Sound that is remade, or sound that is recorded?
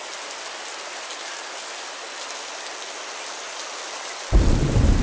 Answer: recorded